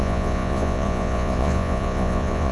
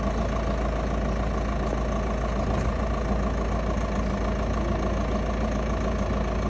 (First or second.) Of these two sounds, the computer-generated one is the first